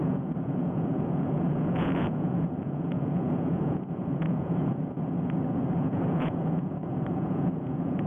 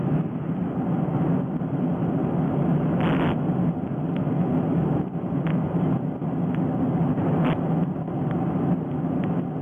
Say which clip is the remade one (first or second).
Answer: first